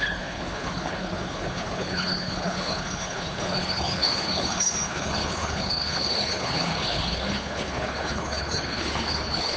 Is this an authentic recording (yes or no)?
no